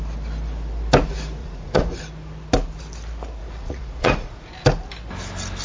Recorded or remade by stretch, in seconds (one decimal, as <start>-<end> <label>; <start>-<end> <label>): 0.0-1.4 recorded; 1.4-2.0 remade; 2.0-3.4 recorded; 3.4-4.5 remade; 4.5-5.6 recorded